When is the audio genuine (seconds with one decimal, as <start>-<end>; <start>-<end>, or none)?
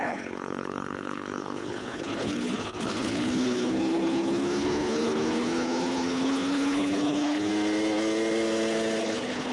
7.5-9.0